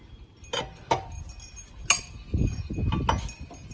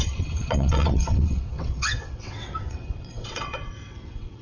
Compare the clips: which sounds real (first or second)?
first